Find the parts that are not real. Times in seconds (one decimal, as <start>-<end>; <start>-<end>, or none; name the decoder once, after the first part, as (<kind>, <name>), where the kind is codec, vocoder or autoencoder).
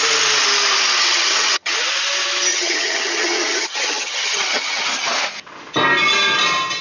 1.0-1.7 (vocoder, HiFi-GAN); 2.5-4.9